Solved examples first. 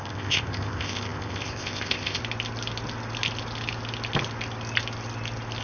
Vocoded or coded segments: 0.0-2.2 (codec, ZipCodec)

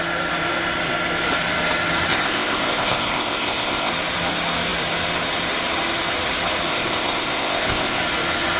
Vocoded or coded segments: 2.1-3.9 (codec, ZipCodec); 6.7-8.0

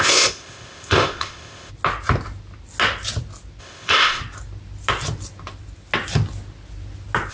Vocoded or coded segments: 0.0-1.7 (codec, ZipCodec); 3.6-4.2

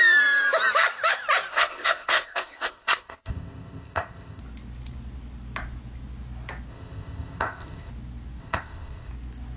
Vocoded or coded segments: 1.5-4.4 (codec, ZipCodec); 6.7-7.9; 8.4-9.1

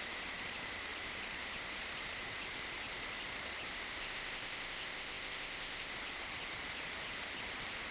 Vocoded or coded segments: 4.0-5.9 (codec, ZipCodec)

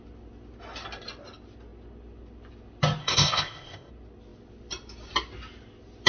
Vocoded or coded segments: 3.0-3.9 (codec, ZipCodec)

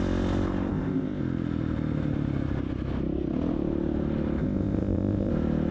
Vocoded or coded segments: 0.7-1.2 (codec, ZipCodec); 4.4-5.3

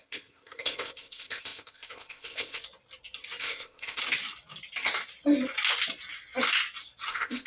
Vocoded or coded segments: 0.0-2.6 (codec, ZipCodec); 3.4-4.0; 7.1-7.5